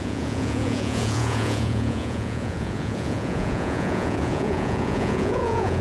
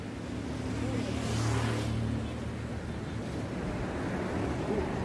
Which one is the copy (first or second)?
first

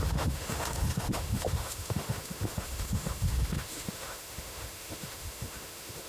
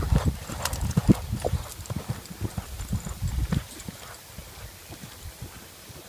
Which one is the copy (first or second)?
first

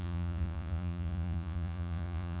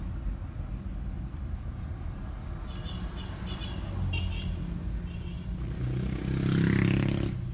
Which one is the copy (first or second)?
first